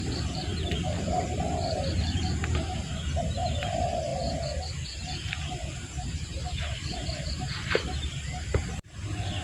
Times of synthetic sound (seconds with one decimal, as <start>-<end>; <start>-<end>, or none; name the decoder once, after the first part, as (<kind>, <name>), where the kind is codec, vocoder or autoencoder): 0.0-4.1 (vocoder, BigVGAN v2); 5.3-9.4